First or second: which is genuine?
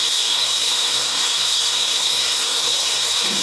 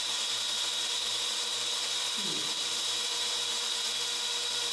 second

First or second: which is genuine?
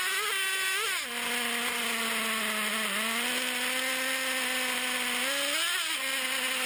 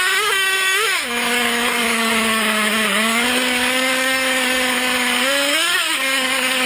first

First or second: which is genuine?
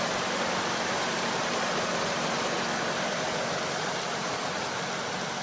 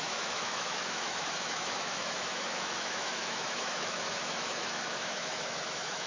first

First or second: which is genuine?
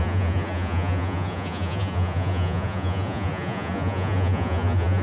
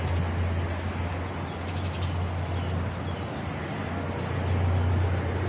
second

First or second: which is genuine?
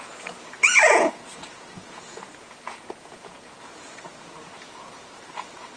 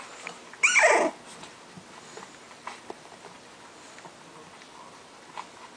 second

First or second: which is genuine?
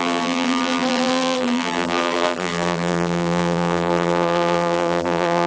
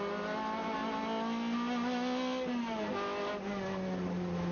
second